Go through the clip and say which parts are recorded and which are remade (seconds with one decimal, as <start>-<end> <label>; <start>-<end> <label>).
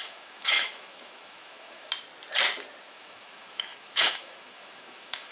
0.0-1.9 remade; 1.9-2.8 recorded; 2.8-5.3 remade